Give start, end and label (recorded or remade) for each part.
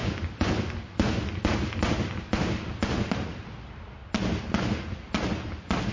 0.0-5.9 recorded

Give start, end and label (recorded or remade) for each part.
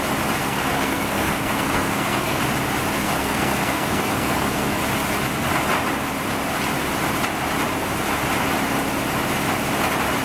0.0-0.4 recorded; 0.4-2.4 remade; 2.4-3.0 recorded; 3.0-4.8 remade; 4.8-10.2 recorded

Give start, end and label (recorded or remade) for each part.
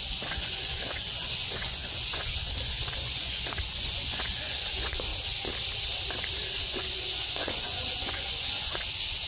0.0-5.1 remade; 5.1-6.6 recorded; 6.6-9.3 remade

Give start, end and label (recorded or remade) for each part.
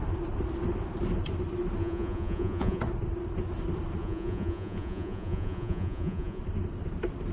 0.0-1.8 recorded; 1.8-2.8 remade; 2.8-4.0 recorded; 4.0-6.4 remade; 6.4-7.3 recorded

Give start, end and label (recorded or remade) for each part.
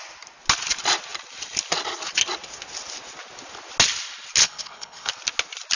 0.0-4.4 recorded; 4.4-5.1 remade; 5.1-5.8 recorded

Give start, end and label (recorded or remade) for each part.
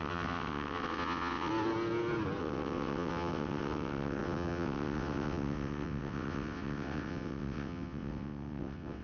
0.0-1.5 remade; 1.5-2.4 recorded; 2.4-9.0 remade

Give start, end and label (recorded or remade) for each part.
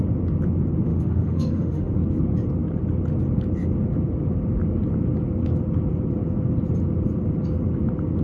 0.0-0.9 recorded; 0.9-1.9 remade; 1.9-8.2 recorded